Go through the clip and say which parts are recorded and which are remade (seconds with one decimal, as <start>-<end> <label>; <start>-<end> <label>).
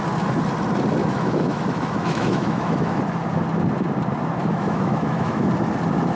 0.0-1.0 recorded; 1.0-3.0 remade; 3.0-4.4 recorded; 4.4-5.5 remade; 5.5-6.2 recorded